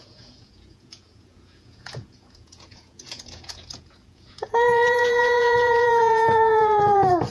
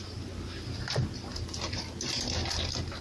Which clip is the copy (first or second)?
first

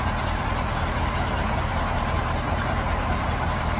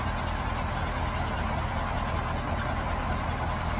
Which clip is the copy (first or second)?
first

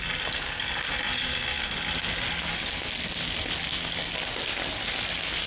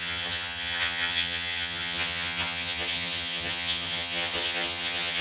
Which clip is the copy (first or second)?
second